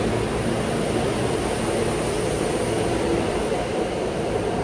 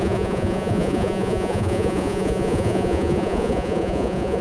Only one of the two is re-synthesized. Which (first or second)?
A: second